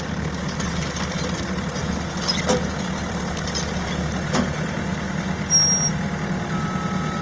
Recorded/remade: recorded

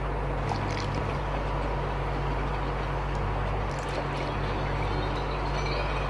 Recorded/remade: recorded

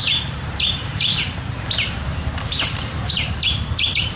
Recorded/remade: remade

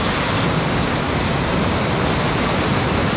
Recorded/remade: recorded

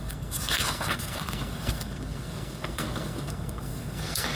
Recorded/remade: remade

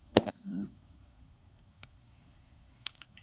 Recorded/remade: remade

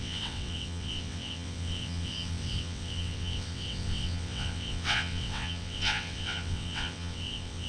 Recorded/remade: remade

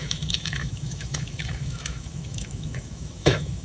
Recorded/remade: remade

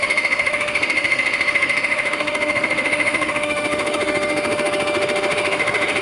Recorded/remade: remade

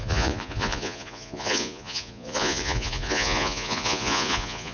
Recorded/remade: remade